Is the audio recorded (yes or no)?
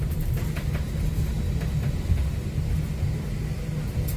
yes